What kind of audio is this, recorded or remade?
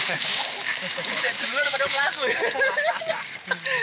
remade